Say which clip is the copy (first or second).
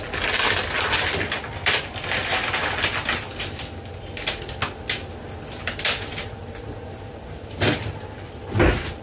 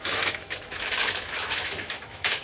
second